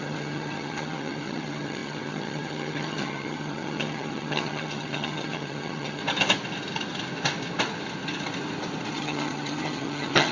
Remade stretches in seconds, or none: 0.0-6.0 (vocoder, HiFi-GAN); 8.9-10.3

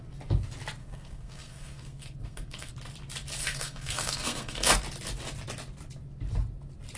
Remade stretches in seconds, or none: 0.8-2.7 (codec, SNAC); 3.4-4.7

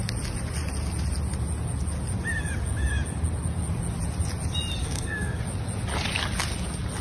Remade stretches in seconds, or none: 4.8-5.4 (codec, SNAC)

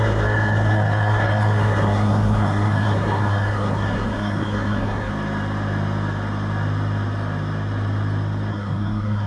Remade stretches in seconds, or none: 0.0-5.1 (codec, SNAC); 8.5-9.3

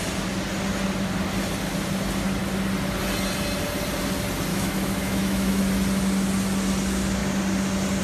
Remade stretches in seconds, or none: 4.5-5.6 (autoencoder, DAC-VAE)

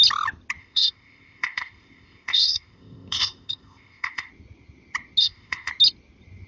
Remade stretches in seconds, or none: 0.6-4.3 (codec, ZipCodec); 5.2-5.7

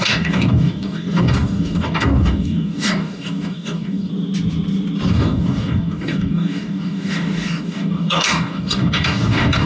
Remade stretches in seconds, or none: 0.0-4.1 (codec, DAC); 5.1-9.7